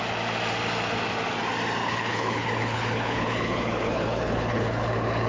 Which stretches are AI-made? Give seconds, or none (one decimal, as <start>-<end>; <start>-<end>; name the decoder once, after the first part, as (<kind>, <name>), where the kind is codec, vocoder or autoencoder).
1.8-5.3 (codec, HILCodec)